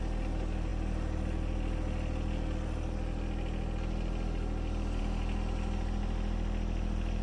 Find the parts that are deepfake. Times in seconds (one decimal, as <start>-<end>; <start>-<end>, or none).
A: none